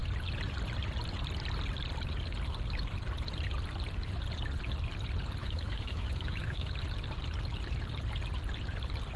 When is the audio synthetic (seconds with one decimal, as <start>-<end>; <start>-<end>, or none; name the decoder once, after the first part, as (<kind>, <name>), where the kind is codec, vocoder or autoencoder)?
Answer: 5.4-6.7 (autoencoder, DAC-VAE)